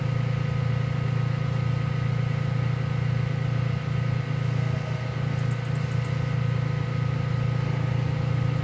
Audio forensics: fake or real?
real